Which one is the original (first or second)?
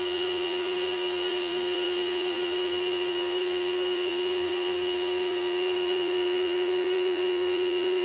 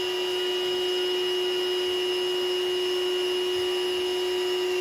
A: second